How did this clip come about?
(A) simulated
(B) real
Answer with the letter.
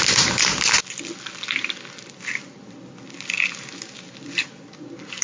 B